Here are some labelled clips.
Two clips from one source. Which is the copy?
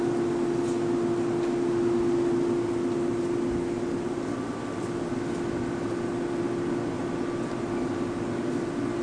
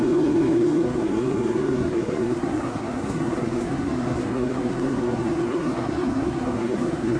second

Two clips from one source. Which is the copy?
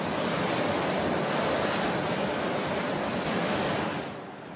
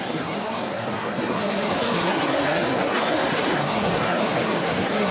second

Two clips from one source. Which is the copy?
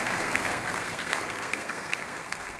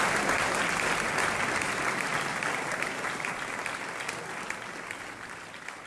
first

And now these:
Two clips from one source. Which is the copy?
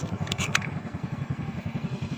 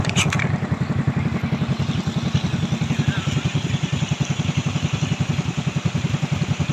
first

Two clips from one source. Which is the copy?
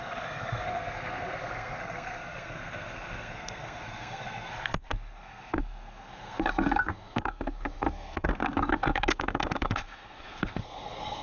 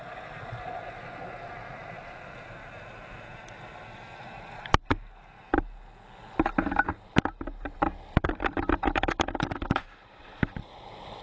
first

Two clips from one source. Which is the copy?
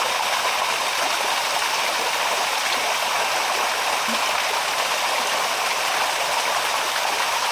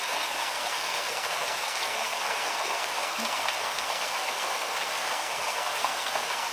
second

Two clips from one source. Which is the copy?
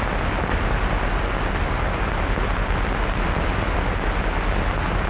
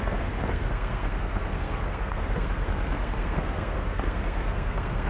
second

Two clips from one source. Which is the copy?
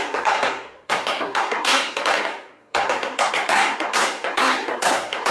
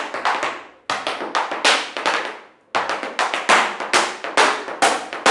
first